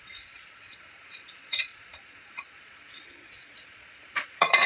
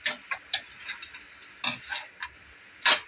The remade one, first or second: first